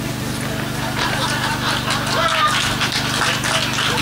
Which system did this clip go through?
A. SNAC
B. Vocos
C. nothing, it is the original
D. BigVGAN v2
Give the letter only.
C